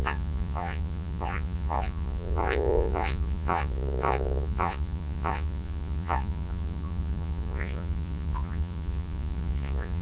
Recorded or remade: remade